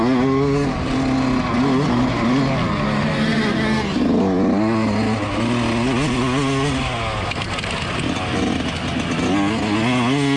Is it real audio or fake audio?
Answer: real